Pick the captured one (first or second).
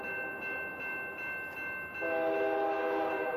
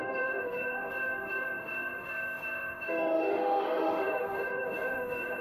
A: first